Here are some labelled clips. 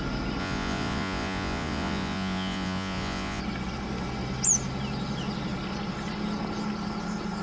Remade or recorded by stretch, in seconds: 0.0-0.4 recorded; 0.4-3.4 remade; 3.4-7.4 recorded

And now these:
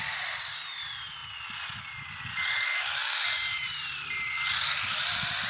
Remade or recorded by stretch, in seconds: 0.0-5.5 remade

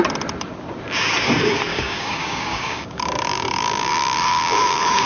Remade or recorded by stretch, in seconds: 0.0-1.7 recorded; 1.7-5.1 remade

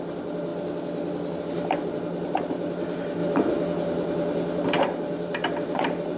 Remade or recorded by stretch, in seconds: 0.0-0.5 remade; 0.5-1.4 recorded; 1.4-6.2 remade

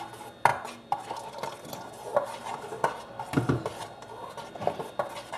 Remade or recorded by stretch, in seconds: 0.0-5.4 recorded

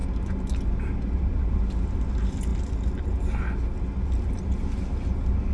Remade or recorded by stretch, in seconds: 0.0-5.5 recorded

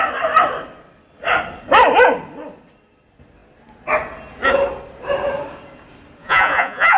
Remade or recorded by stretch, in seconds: 0.0-6.2 recorded; 6.2-7.0 remade

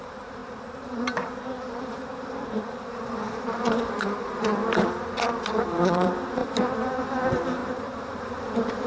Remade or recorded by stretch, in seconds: 0.0-4.5 remade; 4.5-5.6 recorded; 5.6-8.9 remade